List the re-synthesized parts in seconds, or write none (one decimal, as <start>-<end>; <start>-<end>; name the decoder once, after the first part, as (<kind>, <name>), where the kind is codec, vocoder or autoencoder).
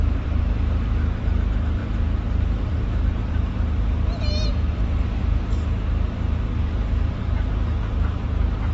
none